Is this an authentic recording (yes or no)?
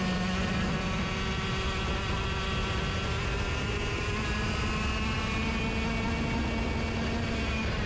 yes